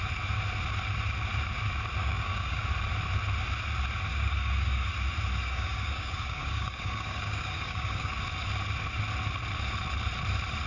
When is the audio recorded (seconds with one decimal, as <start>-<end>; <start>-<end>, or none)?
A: 0.0-2.0; 2.6-4.1; 4.9-5.4; 8.2-10.7